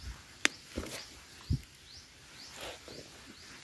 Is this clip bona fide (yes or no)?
yes